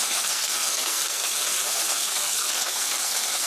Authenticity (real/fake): fake